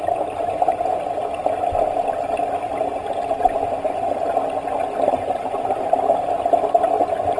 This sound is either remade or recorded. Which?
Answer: recorded